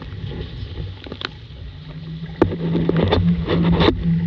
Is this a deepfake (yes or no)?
no